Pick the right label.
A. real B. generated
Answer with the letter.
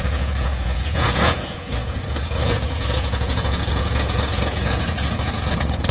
B